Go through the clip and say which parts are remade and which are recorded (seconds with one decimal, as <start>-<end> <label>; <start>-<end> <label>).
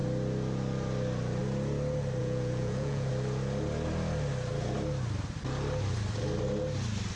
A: 0.0-2.2 recorded; 2.2-3.1 remade; 3.1-7.2 recorded